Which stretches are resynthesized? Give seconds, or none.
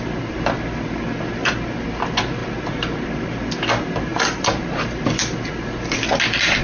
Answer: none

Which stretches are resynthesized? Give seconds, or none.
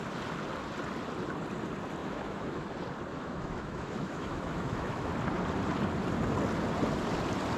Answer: 2.0-2.7 (autoencoder, DAC-VAE); 3.1-5.1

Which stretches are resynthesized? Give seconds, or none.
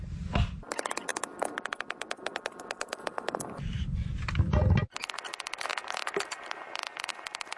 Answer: none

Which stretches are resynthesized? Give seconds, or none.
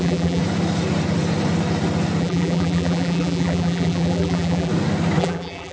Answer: 0.0-0.4 (vocoder, BigVGAN v2); 2.2-4.7; 5.2-5.7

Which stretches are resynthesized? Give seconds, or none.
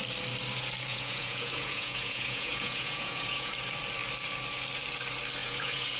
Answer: 0.9-3.5 (vocoder, Vocos); 5.4-6.0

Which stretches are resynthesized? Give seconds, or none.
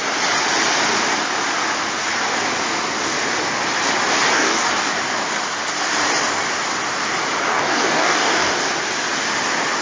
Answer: 4.3-4.9 (codec, DAC); 7.5-8.5